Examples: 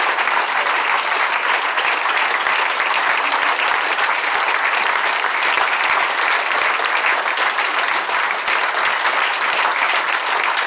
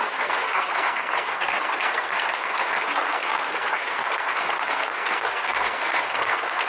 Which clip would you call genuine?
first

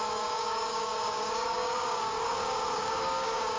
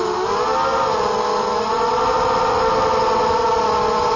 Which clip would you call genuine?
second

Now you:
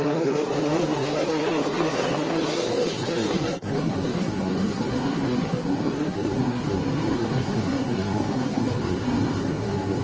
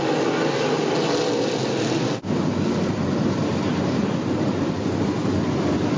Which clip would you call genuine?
second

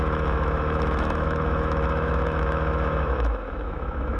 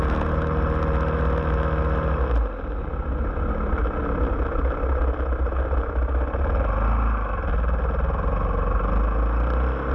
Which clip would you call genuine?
second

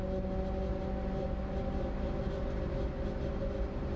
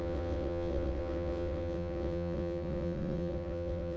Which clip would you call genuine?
first